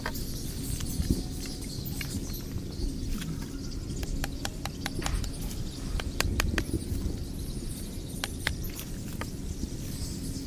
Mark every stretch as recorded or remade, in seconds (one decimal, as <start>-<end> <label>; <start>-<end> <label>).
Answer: 0.0-10.5 recorded